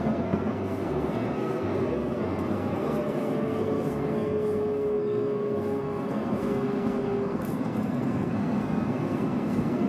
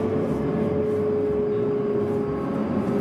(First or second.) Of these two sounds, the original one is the second